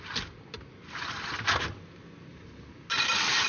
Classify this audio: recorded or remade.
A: recorded